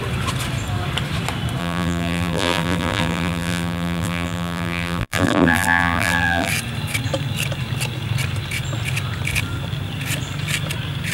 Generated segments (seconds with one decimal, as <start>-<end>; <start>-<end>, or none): 1.6-6.5

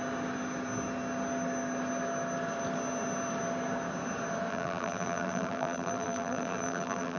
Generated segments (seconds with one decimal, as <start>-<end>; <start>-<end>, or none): 4.5-7.2

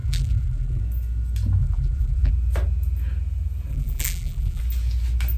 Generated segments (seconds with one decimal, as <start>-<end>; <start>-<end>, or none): 0.0-0.8; 1.6-2.3; 3.7-4.6

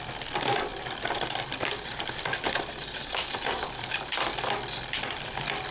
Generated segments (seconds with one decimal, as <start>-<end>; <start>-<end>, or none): 0.7-4.1

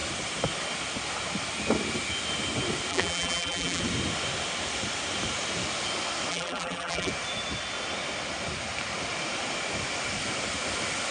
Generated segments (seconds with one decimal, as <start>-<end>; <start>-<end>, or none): 2.9-3.8; 6.3-7.1